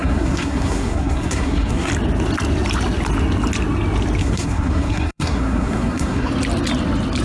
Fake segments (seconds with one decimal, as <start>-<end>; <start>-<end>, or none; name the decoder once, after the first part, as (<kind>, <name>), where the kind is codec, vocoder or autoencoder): 0.0-1.9 (codec, SNAC); 4.2-6.3